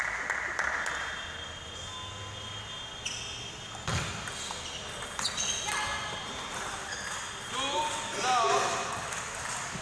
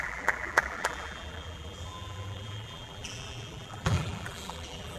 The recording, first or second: first